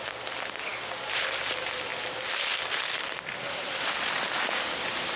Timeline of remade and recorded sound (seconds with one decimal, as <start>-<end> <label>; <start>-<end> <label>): 0.0-5.2 recorded